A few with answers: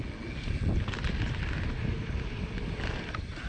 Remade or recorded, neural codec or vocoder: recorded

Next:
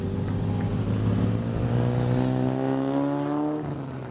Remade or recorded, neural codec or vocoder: recorded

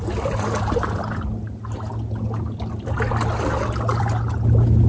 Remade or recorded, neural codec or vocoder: recorded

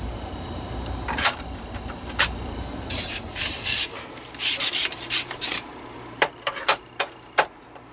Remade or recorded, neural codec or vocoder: remade, vocoder, BigVGAN v2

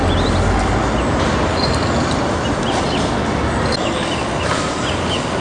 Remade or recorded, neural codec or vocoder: recorded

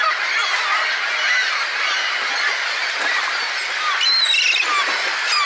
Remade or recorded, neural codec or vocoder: recorded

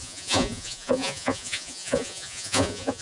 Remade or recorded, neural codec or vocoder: remade, vocoder, Vocos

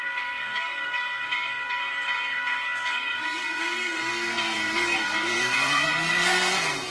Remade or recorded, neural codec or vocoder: remade, codec, SNAC